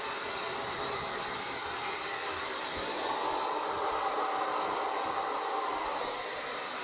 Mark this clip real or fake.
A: real